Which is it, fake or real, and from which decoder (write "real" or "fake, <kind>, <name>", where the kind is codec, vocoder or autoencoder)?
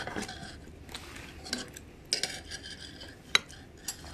real